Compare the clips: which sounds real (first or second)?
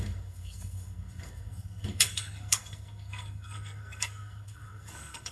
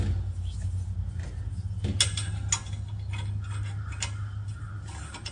second